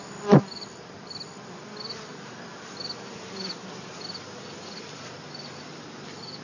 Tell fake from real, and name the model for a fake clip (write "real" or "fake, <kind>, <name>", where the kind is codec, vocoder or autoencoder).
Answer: real